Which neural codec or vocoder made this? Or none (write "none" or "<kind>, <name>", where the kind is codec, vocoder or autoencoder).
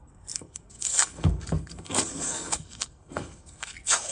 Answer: codec, SNAC